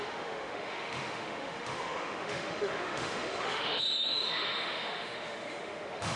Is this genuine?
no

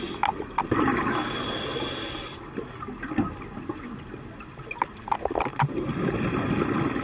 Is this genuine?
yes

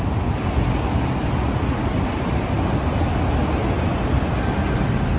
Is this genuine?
yes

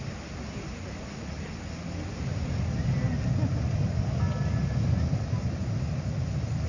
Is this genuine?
yes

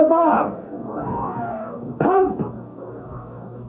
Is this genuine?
no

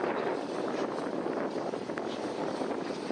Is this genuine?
yes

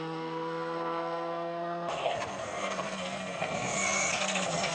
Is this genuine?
no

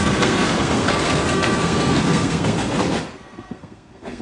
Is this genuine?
no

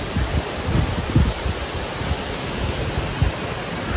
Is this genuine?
yes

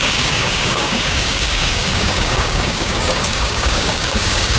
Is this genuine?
no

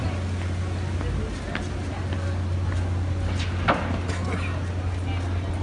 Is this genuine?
yes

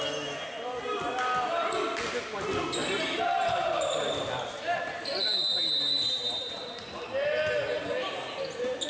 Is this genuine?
yes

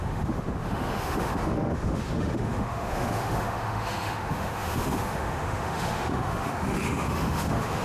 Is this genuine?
no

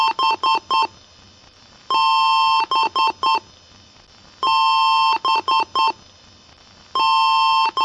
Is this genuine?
yes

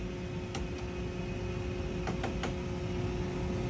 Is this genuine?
yes